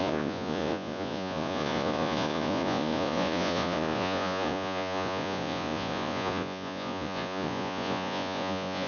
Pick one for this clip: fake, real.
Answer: fake